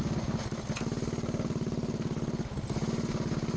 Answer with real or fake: real